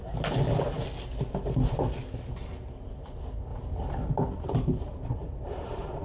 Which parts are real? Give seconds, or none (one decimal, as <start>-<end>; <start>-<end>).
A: 0.0-3.5; 4.1-4.9